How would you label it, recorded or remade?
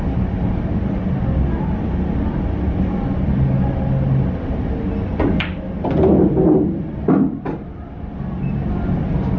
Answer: recorded